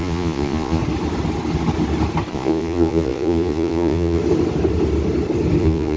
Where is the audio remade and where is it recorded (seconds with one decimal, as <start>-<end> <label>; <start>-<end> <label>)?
0.0-0.8 remade; 0.8-2.3 recorded; 2.3-4.2 remade; 4.2-5.6 recorded; 5.6-6.0 remade